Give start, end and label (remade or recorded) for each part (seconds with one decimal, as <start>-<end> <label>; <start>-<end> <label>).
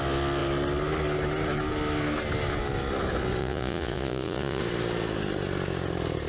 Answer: 0.0-3.4 recorded; 3.4-4.6 remade; 4.6-6.3 recorded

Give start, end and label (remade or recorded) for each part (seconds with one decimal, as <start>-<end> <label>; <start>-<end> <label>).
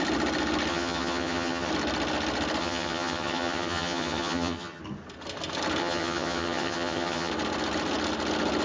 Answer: 0.0-0.7 recorded; 0.7-1.7 remade; 1.7-2.6 recorded; 2.6-4.8 remade; 4.8-5.8 recorded; 5.8-7.3 remade; 7.3-8.6 recorded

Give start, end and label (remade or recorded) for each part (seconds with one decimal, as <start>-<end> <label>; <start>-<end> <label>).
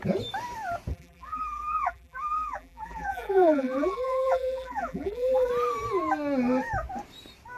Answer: 0.0-0.9 recorded; 0.9-5.5 remade; 5.5-7.6 recorded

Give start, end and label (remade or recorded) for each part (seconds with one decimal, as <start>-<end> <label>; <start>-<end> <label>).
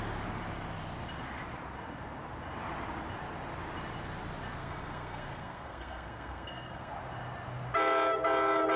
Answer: 0.0-4.6 recorded; 4.6-6.9 remade; 6.9-8.8 recorded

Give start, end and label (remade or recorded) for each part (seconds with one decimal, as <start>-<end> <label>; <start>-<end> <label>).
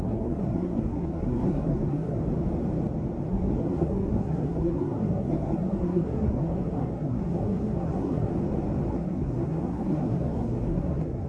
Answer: 0.0-2.2 remade; 2.2-3.3 recorded; 3.3-8.3 remade; 8.3-8.9 recorded; 8.9-11.3 remade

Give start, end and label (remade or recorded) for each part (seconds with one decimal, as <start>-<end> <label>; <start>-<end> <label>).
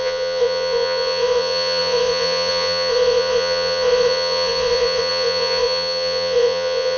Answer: 0.0-7.0 remade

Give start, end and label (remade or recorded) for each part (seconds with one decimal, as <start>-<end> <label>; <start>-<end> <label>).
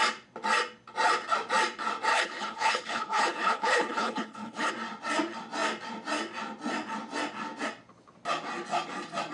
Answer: 0.0-2.1 recorded; 2.1-4.7 remade; 4.7-9.3 recorded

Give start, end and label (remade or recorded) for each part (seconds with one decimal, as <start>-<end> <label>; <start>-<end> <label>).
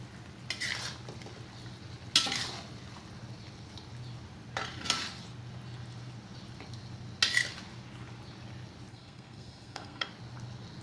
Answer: 0.0-8.9 recorded; 8.9-10.1 remade; 10.1-10.8 recorded